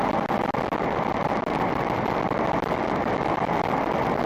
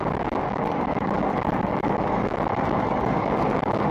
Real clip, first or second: first